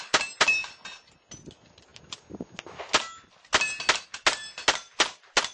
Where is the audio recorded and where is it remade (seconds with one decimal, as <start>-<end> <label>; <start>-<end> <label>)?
0.0-5.5 recorded